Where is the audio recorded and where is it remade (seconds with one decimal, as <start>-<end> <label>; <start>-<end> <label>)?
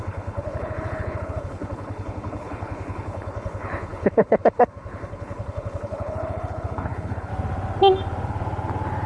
0.0-7.3 remade; 7.3-9.1 recorded